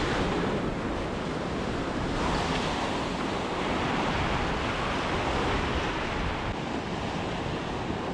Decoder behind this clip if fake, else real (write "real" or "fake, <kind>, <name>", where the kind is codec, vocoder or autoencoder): real